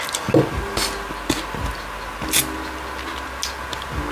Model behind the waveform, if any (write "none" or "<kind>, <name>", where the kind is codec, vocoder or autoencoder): none